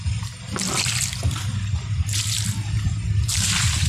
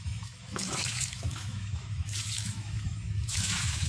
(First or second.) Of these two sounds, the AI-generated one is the second